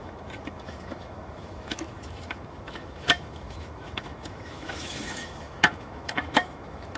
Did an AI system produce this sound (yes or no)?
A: yes